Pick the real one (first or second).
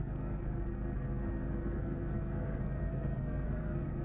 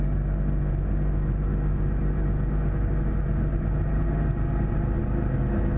second